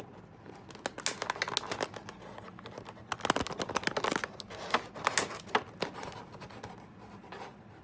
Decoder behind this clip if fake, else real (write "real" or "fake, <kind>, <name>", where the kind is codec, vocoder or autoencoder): real